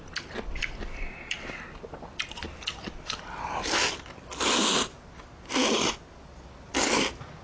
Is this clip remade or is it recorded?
recorded